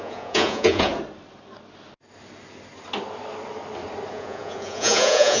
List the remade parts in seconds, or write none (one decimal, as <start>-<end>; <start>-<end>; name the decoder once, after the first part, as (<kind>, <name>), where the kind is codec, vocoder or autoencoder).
0.0-0.9 (vocoder, Vocos); 4.1-5.4